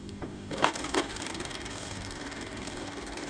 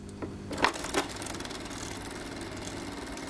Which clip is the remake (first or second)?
first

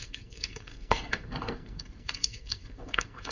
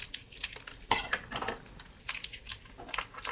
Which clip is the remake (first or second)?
first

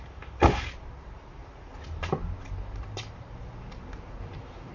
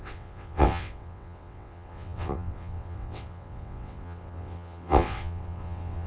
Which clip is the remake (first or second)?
second